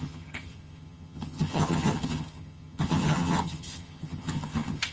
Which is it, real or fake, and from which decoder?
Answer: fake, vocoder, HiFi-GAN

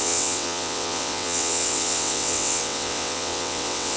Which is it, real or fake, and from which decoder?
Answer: fake, vocoder, WaveNeXt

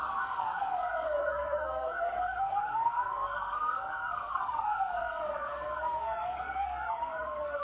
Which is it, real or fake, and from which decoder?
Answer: fake, codec, SNAC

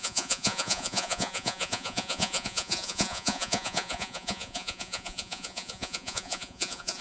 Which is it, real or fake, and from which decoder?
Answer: fake, vocoder, Vocos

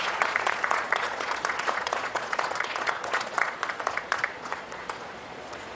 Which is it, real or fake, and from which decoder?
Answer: fake, vocoder, Vocos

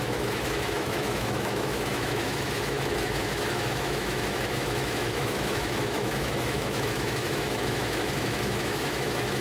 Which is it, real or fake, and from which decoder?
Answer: fake, autoencoder, DAC-VAE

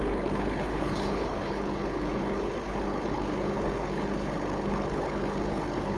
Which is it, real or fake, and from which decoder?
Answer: fake, codec, HILCodec